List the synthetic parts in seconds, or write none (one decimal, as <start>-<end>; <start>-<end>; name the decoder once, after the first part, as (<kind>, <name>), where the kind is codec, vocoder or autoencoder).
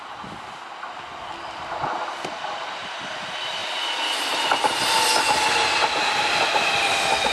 none